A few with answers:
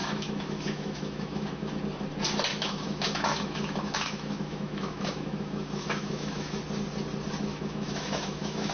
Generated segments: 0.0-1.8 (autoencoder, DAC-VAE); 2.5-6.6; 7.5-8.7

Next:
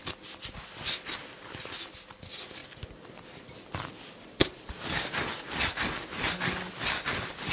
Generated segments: none

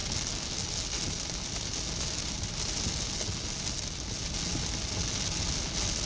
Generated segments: none

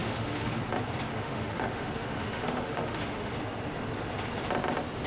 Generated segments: 0.0-0.6 (autoencoder, DAC-VAE); 1.1-3.3

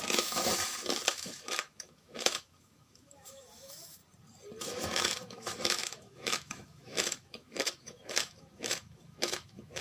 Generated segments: 0.0-0.5 (autoencoder, DAC-VAE); 1.1-4.0; 4.6-9.8

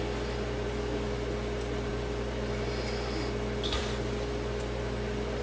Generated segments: none